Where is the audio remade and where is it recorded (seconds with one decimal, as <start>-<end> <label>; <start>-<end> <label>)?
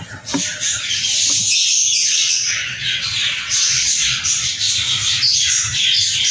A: 0.0-2.0 recorded; 2.0-4.2 remade; 4.2-6.3 recorded